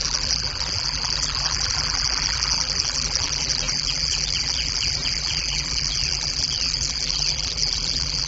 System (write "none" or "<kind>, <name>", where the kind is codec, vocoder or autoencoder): vocoder, BigVGAN v2